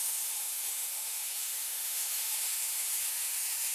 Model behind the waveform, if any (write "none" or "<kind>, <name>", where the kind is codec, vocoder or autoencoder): autoencoder, DAC-VAE